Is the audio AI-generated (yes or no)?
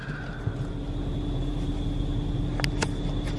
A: no